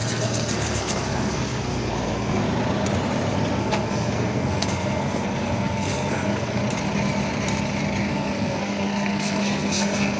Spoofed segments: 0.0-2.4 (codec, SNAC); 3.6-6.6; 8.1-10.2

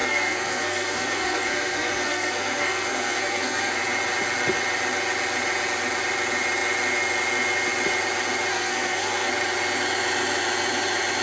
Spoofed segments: 0.0-3.8 (codec, SNAC); 8.5-9.3

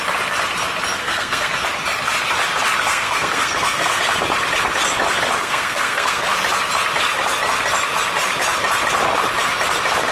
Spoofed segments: 1.0-1.5 (codec, SNAC); 2.9-4.0; 5.4-6.3

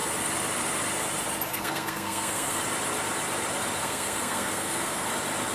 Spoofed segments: 1.5-2.6 (codec, SNAC); 3.8-5.1

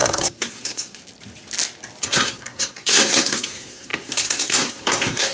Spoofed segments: 0.0-1.0 (codec, SNAC); 2.0-5.3

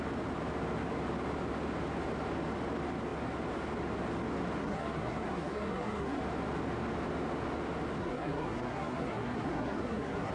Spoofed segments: 4.6-6.2 (codec, SNAC); 8.0-10.3

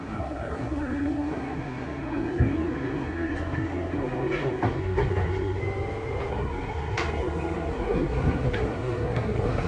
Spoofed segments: 0.0-5.6 (codec, SNAC); 6.3-9.7